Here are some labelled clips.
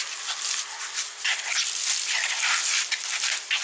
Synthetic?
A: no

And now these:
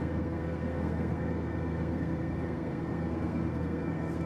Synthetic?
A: yes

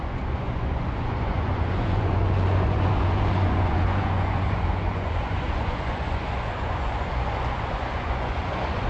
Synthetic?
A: yes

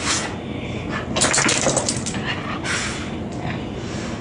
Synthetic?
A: no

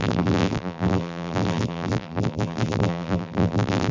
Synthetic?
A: yes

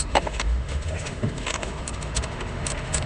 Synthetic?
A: yes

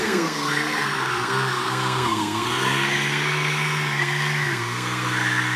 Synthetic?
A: yes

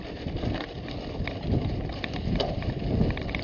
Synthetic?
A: no